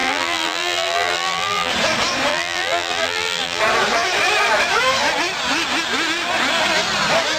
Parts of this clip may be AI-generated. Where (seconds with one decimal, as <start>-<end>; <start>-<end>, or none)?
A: 0.0-1.7; 2.3-3.6